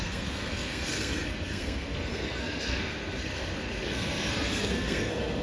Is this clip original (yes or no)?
no